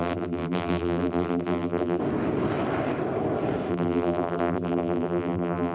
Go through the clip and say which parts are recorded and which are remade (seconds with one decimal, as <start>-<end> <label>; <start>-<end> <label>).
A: 0.0-2.0 remade; 2.0-3.7 recorded; 3.7-5.7 remade